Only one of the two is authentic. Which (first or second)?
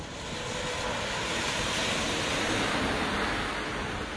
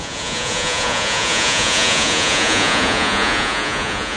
first